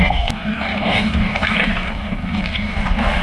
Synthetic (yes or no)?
yes